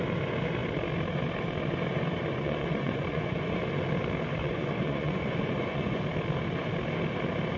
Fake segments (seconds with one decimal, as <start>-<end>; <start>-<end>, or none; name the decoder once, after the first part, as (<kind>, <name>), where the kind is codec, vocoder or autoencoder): 2.3-3.6 (vocoder, Vocos); 4.4-6.0